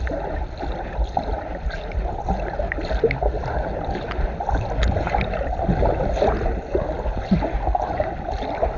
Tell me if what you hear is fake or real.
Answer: real